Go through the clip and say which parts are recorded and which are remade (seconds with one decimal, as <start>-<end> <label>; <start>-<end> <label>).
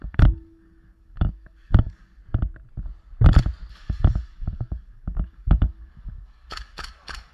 0.0-2.2 remade; 2.2-3.7 recorded; 3.7-7.3 remade